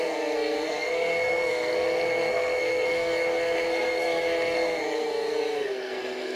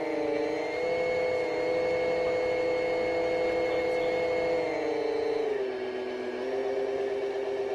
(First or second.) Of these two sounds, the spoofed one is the first